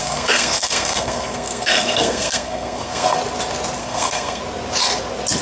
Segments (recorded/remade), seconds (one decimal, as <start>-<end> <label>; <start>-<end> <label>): 0.0-3.2 remade; 3.2-3.8 recorded; 3.8-4.4 remade; 4.4-5.4 recorded